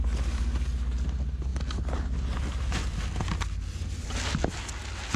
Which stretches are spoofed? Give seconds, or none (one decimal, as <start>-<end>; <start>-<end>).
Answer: none